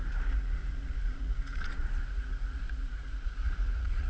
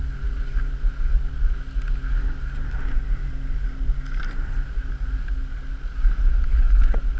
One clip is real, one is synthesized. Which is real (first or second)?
second